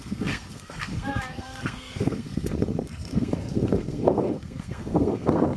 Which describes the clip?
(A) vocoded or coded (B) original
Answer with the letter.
A